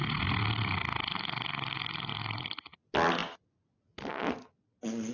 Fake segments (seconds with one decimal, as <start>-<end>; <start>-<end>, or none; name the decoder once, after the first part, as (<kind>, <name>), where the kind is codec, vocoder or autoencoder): none